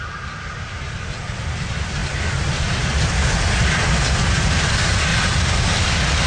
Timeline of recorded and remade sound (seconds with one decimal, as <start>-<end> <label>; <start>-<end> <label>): 0.0-2.0 remade; 2.0-2.6 recorded; 2.6-3.2 remade; 3.2-4.3 recorded; 4.3-6.3 remade